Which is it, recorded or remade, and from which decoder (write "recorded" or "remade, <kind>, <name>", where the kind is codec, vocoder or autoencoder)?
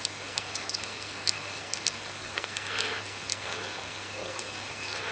remade, codec, SNAC